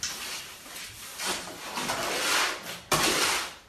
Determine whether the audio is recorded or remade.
recorded